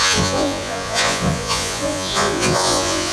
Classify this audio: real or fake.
fake